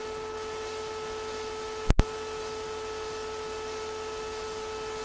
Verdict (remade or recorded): recorded